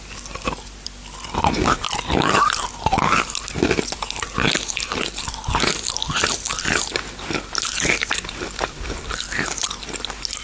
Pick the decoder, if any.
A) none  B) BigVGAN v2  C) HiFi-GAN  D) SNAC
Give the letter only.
A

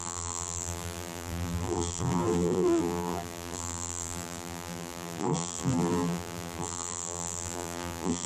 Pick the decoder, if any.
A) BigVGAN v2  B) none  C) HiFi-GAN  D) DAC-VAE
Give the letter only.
A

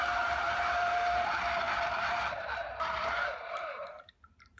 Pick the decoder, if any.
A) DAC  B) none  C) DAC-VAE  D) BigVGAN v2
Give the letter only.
D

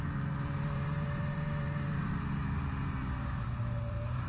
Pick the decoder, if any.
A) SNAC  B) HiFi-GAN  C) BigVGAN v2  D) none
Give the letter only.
C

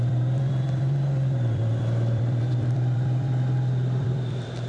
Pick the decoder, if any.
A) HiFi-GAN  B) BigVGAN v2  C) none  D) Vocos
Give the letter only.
B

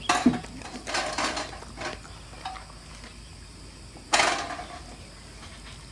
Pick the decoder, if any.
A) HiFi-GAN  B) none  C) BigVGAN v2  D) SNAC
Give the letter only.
B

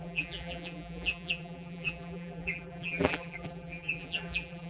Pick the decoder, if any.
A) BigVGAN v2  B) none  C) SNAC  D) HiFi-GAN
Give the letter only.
A